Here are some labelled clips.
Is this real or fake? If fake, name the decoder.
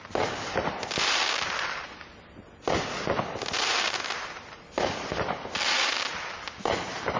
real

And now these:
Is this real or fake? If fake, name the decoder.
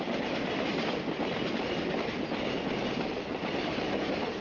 real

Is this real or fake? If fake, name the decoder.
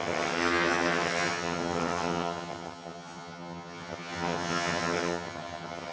fake, vocoder, HiFi-GAN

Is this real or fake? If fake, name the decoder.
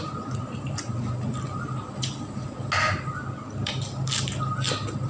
real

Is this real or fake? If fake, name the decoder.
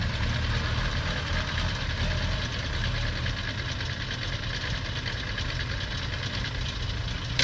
real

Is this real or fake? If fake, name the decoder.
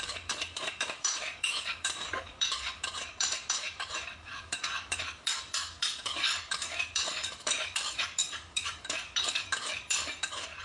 fake, codec, DAC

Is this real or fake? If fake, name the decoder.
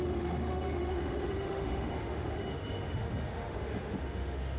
fake, autoencoder, DAC-VAE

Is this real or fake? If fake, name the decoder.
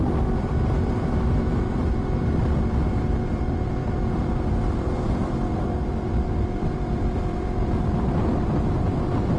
fake, vocoder, BigVGAN v2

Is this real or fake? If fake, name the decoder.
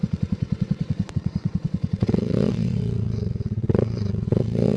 fake, vocoder, WaveNeXt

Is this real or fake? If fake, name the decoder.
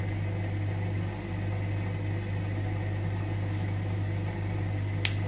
real